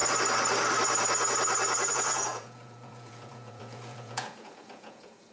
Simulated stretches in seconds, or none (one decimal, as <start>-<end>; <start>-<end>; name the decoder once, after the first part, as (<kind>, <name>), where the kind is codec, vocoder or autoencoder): 1.9-5.3 (vocoder, Vocos)